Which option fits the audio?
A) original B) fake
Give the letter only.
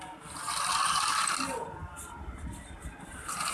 A